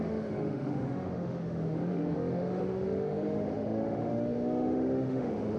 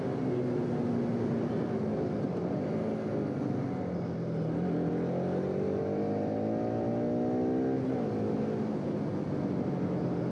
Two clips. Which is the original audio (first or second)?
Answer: second